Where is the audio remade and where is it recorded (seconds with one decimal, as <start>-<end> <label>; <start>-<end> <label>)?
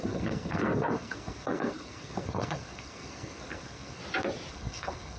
0.0-4.0 remade; 4.0-4.5 recorded; 4.5-5.2 remade